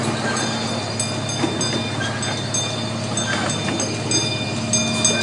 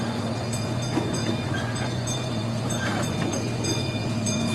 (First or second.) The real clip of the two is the first